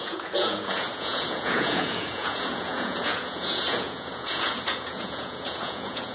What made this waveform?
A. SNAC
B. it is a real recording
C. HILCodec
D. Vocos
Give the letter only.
D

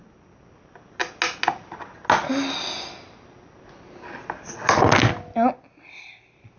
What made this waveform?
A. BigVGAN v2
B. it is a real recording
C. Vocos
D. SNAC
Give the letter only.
B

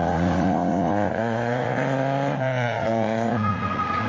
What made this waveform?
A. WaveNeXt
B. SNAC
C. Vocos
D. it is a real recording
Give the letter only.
C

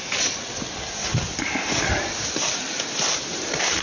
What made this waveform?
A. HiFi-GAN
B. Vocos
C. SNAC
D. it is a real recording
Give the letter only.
D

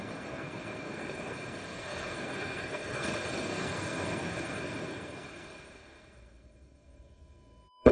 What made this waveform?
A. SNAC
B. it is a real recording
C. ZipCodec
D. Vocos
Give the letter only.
A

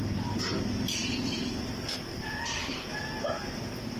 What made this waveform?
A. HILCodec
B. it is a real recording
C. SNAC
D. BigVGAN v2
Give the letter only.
D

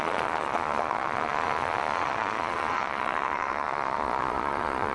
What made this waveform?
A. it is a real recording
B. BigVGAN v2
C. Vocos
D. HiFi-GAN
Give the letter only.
C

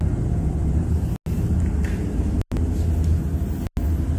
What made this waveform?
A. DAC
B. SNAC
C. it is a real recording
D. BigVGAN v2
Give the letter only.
C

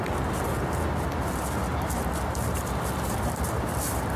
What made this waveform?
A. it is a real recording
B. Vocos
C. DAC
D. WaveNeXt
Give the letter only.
A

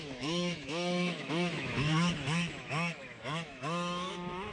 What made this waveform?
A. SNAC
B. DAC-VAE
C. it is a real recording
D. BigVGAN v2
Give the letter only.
B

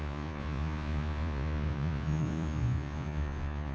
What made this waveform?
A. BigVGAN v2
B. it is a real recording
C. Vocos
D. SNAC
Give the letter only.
C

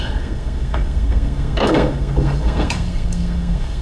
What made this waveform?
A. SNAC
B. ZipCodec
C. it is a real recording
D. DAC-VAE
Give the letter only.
A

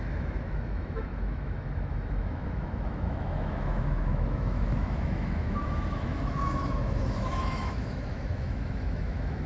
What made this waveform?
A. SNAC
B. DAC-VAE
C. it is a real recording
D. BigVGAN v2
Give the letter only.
B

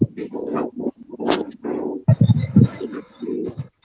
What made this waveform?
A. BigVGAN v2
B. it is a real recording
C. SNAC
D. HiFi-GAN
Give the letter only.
B